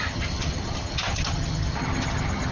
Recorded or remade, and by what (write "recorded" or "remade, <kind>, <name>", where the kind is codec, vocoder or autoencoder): remade, vocoder, HiFi-GAN